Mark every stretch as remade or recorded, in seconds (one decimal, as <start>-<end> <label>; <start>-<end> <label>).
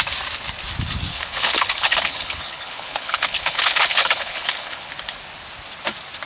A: 0.0-1.1 recorded; 1.1-4.9 remade; 4.9-6.3 recorded